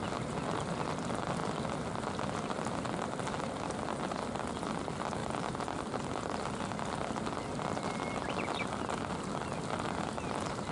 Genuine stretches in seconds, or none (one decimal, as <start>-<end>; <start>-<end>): 0.0-10.7

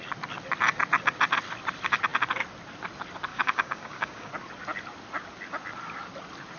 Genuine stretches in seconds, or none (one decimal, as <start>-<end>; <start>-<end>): 0.0-3.3; 4.3-6.6

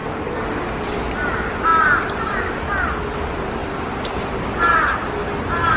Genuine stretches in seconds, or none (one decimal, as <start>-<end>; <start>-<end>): 0.0-1.7; 2.4-3.6; 4.3-5.8

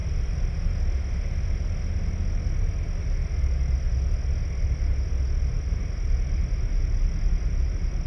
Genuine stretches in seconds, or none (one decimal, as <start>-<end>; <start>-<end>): 0.0-8.1

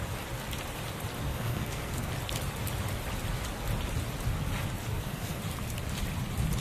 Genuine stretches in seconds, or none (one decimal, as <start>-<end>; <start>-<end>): 0.0-1.3; 2.1-4.9; 5.4-6.6

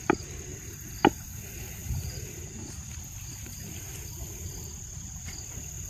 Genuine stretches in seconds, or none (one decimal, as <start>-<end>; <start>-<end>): none